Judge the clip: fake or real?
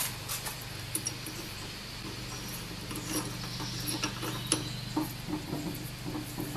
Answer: real